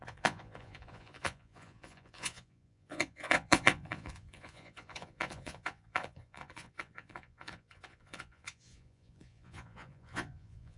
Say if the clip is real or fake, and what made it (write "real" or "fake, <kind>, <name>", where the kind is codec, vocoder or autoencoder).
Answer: fake, vocoder, Vocos